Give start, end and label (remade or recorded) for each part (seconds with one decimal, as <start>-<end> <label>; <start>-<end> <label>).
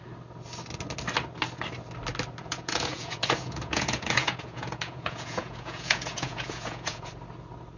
0.0-2.4 recorded; 2.4-7.1 remade; 7.1-7.8 recorded